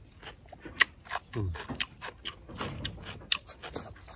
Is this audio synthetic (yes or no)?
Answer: no